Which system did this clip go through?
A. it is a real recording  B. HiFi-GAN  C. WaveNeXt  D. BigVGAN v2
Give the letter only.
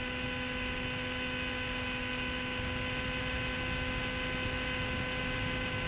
A